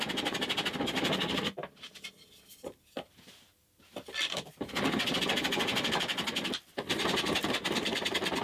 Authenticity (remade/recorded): remade